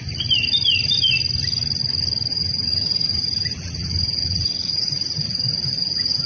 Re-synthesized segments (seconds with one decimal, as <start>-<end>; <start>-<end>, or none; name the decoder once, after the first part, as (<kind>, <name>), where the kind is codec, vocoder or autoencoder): 2.3-6.3 (vocoder, Vocos)